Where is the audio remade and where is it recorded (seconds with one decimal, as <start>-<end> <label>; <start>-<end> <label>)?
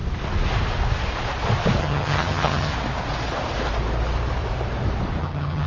0.0-1.8 recorded; 1.8-2.7 remade; 2.7-5.2 recorded; 5.2-5.7 remade